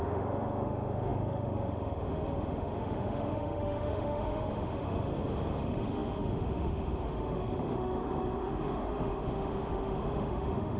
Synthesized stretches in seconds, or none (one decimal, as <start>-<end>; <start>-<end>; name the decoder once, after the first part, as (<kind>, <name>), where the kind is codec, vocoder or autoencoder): 0.0-5.1 (autoencoder, DAC-VAE); 5.6-10.8